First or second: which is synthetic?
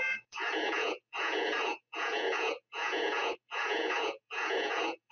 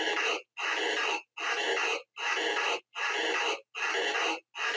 first